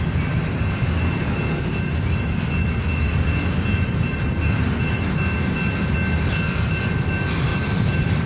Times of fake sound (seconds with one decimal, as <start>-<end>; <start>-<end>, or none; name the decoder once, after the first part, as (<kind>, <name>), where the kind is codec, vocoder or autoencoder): 7.5-8.3 (vocoder, BigVGAN v2)